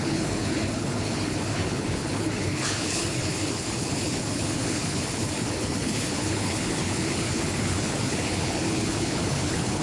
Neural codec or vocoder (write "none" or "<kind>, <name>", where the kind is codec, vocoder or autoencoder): codec, HILCodec